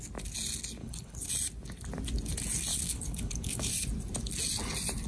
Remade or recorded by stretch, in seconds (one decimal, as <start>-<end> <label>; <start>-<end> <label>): 0.0-0.8 recorded; 0.8-1.3 remade; 1.3-2.7 recorded; 2.7-3.7 remade; 3.7-5.1 recorded